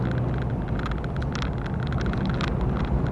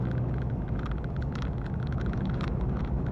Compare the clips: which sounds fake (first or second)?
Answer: second